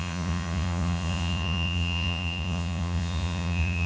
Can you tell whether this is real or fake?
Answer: fake